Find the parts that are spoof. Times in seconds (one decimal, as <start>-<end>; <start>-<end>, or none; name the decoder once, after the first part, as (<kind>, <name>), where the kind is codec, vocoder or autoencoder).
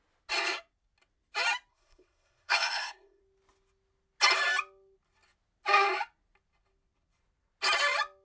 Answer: 1.7-3.2 (codec, SNAC)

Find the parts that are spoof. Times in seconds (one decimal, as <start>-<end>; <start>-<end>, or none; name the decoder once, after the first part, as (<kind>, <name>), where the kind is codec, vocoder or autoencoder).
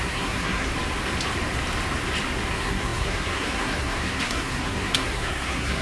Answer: 0.0-0.7 (codec, SNAC); 2.5-5.8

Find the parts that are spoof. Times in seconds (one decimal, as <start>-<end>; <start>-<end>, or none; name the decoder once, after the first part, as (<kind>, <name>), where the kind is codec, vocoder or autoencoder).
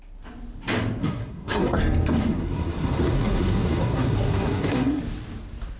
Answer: 1.0-1.8 (codec, SNAC); 2.2-5.0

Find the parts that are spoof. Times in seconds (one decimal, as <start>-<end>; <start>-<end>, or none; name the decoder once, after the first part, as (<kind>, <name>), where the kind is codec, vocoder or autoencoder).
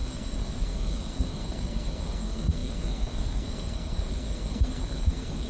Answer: 0.0-5.5 (codec, SNAC)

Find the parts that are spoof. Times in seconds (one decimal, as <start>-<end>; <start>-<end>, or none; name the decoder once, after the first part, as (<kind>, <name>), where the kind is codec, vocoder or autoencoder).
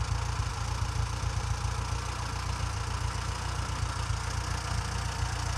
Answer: none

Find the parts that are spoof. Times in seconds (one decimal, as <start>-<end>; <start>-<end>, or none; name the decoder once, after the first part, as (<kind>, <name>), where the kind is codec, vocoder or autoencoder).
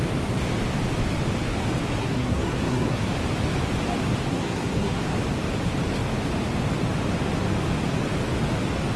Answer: 2.0-3.0 (codec, SNAC); 4.3-5.0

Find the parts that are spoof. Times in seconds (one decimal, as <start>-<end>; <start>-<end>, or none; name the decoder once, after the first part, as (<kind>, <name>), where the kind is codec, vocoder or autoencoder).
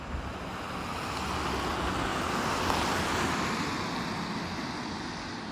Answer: none